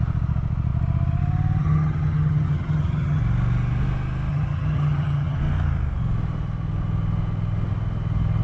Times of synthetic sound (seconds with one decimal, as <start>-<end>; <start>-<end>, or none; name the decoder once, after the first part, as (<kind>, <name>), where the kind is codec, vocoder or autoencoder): 1.6-3.2 (vocoder, HiFi-GAN); 4.3-5.4